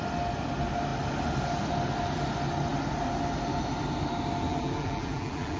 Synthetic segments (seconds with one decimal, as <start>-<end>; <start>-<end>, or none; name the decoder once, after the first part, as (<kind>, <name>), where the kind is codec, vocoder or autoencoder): 4.5-5.6 (vocoder, BigVGAN v2)